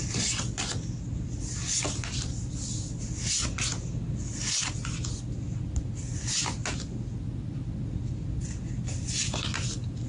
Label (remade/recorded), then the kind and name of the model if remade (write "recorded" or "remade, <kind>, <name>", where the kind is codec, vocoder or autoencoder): recorded